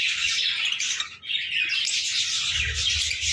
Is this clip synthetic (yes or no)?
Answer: no